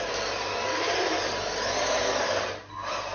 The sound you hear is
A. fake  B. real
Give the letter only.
B